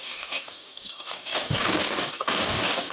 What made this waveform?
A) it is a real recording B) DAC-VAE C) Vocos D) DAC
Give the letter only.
D